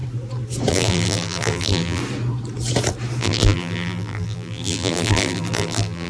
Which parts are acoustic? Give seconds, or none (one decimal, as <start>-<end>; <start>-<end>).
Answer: 0.0-0.7; 2.0-3.2